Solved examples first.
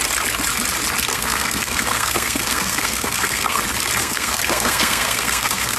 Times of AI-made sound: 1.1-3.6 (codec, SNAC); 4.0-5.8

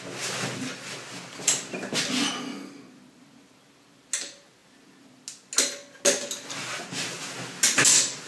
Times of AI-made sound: none